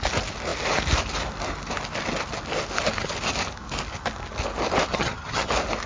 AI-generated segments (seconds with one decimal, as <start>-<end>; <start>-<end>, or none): 4.9-5.5